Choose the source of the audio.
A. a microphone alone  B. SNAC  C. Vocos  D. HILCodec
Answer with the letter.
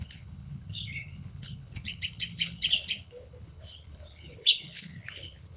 D